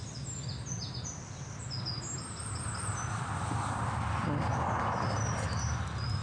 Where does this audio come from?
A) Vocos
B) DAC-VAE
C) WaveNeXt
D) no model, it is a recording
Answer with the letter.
D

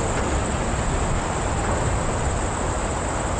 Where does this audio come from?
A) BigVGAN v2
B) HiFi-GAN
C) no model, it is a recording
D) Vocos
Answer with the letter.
C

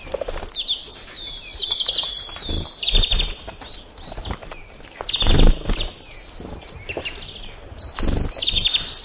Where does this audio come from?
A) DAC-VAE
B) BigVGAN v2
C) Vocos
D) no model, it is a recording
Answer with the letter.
D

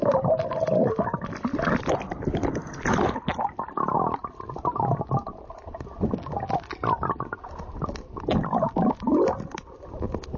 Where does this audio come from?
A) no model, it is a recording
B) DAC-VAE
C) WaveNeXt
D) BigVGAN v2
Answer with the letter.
A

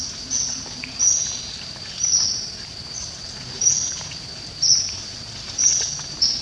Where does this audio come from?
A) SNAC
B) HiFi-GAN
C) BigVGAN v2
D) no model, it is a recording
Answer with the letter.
D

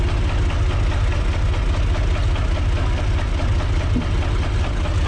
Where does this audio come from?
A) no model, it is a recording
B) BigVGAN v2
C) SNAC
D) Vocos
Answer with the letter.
A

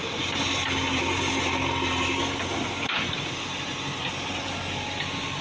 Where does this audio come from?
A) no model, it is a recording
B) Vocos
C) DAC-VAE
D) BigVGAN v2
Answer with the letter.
A